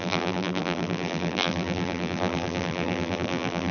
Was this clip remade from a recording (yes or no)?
yes